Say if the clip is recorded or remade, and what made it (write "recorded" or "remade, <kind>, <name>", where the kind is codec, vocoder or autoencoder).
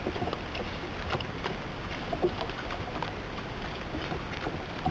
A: recorded